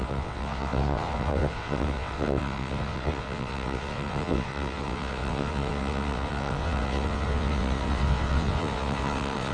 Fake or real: fake